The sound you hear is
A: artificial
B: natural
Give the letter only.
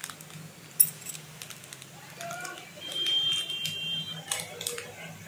B